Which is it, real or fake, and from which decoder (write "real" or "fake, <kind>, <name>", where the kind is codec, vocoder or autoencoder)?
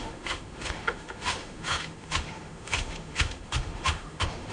fake, autoencoder, DAC-VAE